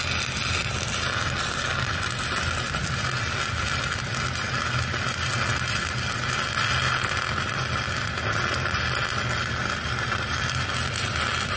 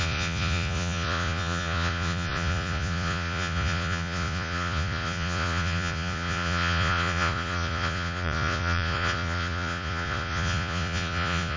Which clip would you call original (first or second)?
first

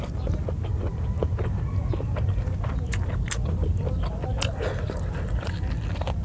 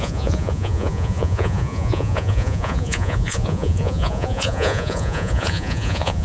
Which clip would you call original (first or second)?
first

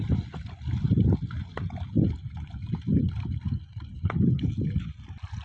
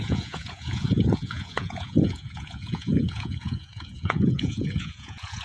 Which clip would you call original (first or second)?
first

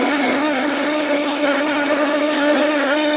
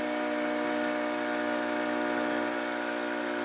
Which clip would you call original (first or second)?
second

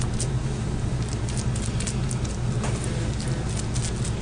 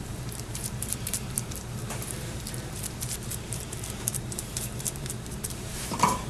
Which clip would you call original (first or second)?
first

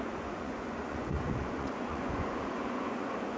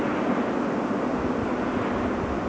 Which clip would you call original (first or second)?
second